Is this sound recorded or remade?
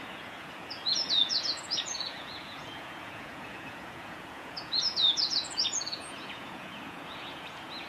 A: remade